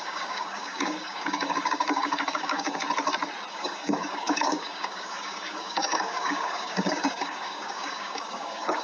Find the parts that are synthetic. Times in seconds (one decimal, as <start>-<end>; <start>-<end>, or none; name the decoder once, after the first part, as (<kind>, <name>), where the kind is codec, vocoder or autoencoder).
0.0-2.8 (codec, DAC); 3.5-8.8